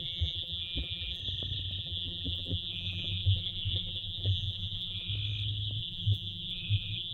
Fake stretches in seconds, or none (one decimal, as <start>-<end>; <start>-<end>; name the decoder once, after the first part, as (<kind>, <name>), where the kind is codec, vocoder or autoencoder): 0.0-1.2 (vocoder, BigVGAN v2); 1.8-5.1; 5.8-7.1